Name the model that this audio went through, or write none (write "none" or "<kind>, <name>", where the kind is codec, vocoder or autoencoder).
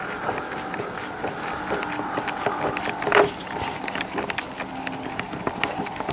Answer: none